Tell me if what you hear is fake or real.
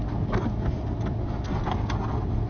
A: real